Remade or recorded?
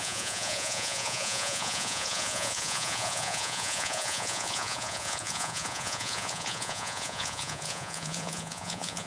remade